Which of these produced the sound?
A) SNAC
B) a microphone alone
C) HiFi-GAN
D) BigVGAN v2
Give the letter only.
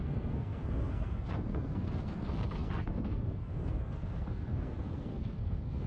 A